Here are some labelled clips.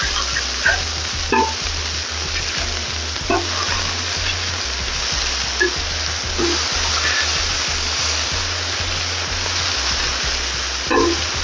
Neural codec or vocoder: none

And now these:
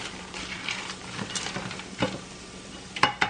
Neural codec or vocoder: vocoder, BigVGAN v2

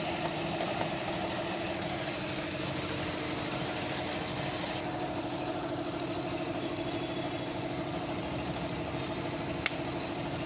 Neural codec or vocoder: none